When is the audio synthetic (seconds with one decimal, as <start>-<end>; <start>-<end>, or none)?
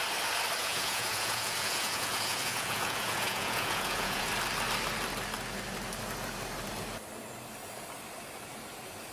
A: 0.6-4.3